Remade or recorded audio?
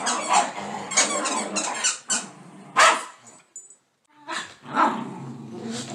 recorded